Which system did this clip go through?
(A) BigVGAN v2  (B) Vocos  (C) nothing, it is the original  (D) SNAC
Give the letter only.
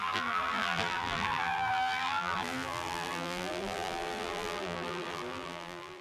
A